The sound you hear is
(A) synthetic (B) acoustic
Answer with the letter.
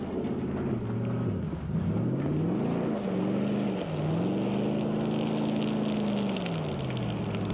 B